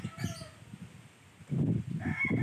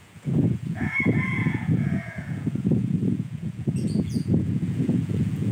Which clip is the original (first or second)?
first